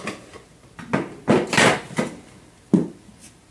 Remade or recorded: recorded